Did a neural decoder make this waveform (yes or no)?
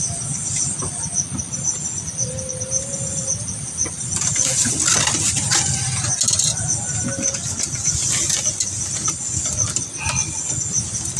no